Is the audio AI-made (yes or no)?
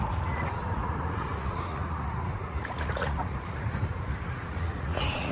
yes